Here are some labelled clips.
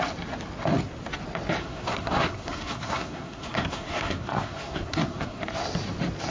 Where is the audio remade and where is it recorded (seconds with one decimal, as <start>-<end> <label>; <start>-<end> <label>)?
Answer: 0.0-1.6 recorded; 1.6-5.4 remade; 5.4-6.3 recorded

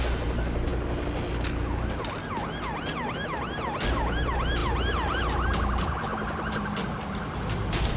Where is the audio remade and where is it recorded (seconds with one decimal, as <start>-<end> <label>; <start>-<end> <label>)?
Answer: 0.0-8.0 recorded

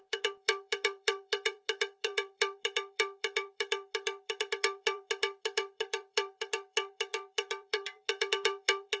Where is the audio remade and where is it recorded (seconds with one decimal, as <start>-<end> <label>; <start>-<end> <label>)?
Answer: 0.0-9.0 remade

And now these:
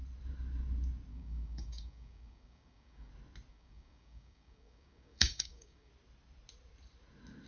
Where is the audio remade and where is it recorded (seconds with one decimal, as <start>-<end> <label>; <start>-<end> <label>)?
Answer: 0.0-1.1 recorded; 1.1-3.1 remade; 3.1-3.5 recorded; 3.5-5.9 remade; 5.9-7.5 recorded

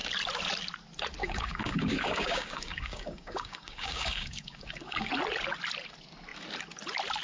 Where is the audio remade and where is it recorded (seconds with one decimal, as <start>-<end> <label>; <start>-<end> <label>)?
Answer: 0.0-1.2 recorded; 1.2-5.1 remade; 5.1-7.2 recorded